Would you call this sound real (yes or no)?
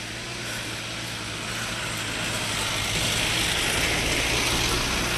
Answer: yes